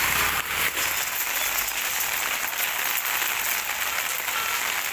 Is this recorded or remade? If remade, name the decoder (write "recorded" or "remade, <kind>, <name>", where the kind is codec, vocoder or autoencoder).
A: recorded